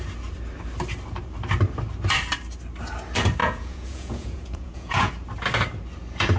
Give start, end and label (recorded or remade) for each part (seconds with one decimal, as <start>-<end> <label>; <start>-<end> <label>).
0.0-3.4 recorded; 3.4-5.1 remade; 5.1-6.4 recorded